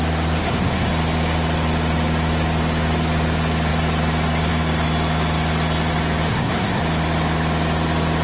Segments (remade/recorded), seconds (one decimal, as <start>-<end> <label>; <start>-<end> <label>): 0.0-0.4 recorded; 0.4-0.9 remade; 0.9-6.3 recorded; 6.3-6.8 remade; 6.8-8.2 recorded